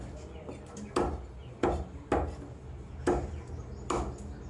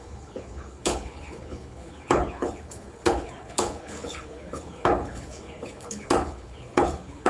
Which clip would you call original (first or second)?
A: first